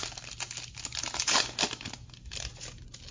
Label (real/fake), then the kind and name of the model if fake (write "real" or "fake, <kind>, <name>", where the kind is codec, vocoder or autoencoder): real